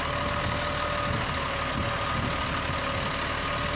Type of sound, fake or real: real